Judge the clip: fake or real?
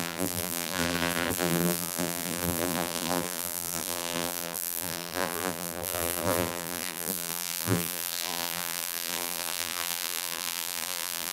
fake